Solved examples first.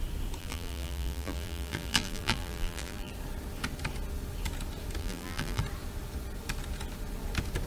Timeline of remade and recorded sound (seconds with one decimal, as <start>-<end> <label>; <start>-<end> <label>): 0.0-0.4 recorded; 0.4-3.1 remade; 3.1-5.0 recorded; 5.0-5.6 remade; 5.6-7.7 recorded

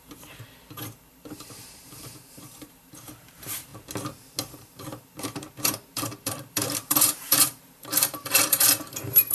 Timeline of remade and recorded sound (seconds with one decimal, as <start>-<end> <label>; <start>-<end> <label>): 0.0-3.7 remade; 3.7-4.4 recorded; 4.4-9.3 remade

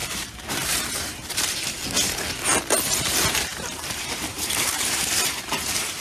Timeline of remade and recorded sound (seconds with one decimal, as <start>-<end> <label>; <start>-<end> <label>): 0.0-1.8 remade; 1.8-3.3 recorded; 3.3-6.0 remade

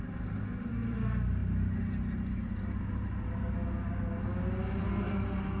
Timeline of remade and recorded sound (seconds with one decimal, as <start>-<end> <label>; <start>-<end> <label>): 0.0-5.6 recorded

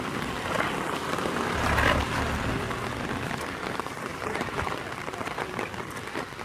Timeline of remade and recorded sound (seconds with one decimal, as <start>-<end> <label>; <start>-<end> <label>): 0.0-4.1 recorded; 4.1-4.7 remade; 4.7-6.4 recorded

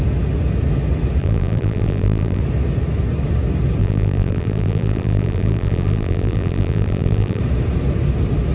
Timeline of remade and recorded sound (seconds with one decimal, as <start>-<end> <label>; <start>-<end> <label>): 0.0-1.2 recorded; 1.2-2.4 remade; 2.4-3.8 recorded; 3.8-7.4 remade; 7.4-8.5 recorded